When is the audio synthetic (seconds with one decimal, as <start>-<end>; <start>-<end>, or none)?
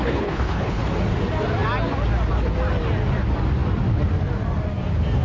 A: 0.0-0.8